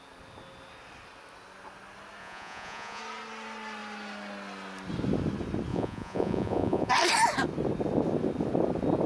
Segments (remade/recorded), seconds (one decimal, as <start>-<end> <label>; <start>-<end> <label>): 0.0-2.2 recorded; 2.2-3.0 remade; 3.0-5.7 recorded; 5.7-6.9 remade; 6.9-9.1 recorded